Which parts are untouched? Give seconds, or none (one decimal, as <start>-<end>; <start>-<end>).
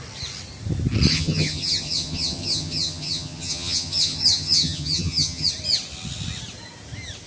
0.0-1.1; 5.5-7.3